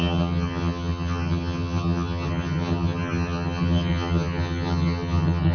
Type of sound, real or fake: fake